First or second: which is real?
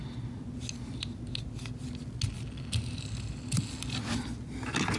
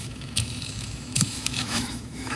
first